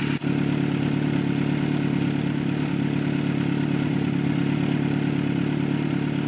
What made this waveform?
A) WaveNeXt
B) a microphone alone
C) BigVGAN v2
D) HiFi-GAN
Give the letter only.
B